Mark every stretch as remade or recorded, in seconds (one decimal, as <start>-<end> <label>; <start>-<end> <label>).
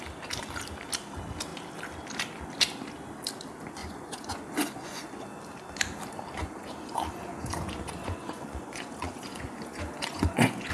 0.0-3.8 recorded; 3.8-5.2 remade; 5.2-6.3 recorded; 6.3-10.7 remade